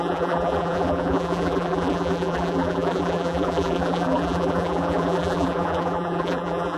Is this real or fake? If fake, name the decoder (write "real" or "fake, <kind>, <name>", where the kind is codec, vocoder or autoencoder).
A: fake, vocoder, BigVGAN v2